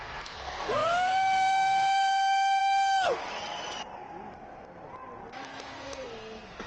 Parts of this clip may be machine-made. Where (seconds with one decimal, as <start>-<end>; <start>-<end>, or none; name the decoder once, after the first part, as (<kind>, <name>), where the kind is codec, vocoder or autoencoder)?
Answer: 0.0-3.2 (codec, SNAC); 5.4-6.7